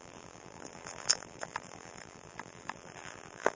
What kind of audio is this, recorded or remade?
remade